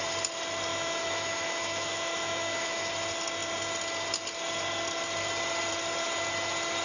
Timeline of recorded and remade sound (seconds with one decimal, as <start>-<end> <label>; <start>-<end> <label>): 0.0-0.7 recorded; 0.7-2.9 remade; 2.9-6.8 recorded